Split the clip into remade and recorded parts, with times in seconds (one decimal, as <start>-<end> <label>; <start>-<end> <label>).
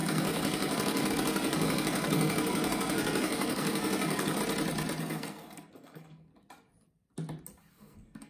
0.0-4.4 remade; 4.4-5.0 recorded; 5.0-6.3 remade; 6.3-7.7 recorded; 7.7-8.3 remade